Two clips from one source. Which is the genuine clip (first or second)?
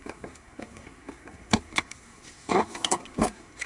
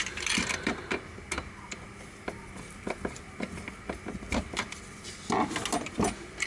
second